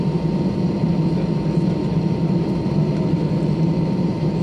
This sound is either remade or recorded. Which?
recorded